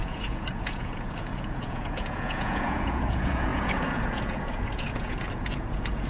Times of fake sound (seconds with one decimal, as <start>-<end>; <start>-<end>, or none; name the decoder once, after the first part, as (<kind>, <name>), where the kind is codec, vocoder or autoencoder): 0.0-6.1 (vocoder, Vocos)